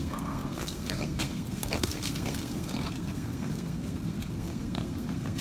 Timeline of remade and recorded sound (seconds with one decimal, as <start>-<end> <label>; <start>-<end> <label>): 0.0-5.4 remade